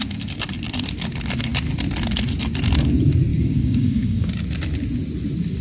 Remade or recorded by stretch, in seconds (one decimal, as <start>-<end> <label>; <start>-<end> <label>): 0.0-3.3 recorded; 3.3-4.3 remade; 4.3-5.6 recorded